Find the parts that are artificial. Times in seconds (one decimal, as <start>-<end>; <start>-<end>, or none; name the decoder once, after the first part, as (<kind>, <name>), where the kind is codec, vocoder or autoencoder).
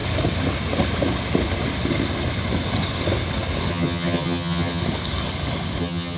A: 3.7-4.8 (vocoder, HiFi-GAN); 5.8-6.2